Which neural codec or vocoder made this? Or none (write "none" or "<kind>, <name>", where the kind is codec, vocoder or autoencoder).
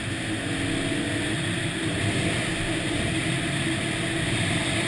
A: none